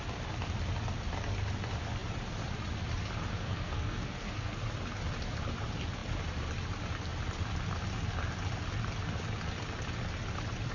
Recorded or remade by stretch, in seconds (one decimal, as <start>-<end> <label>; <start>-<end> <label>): 0.0-3.3 recorded; 3.3-4.6 remade; 4.6-10.7 recorded